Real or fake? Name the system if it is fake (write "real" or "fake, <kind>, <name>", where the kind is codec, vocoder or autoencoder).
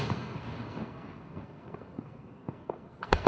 fake, codec, SNAC